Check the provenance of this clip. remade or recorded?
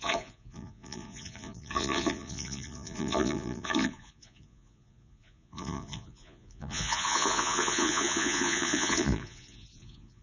remade